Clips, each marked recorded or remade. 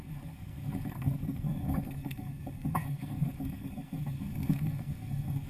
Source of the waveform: remade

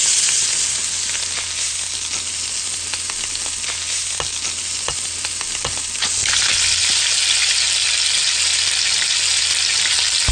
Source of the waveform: recorded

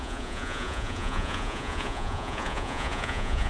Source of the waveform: remade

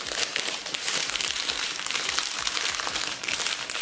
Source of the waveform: remade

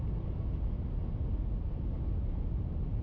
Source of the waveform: recorded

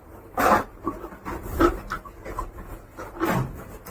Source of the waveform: recorded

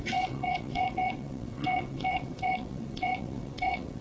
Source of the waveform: remade